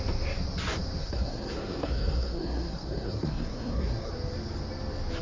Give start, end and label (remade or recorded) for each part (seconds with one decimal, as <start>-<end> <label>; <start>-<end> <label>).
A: 0.0-1.0 recorded; 1.0-4.1 remade; 4.1-5.2 recorded